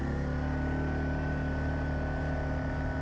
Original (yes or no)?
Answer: yes